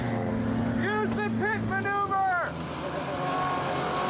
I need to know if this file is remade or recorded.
recorded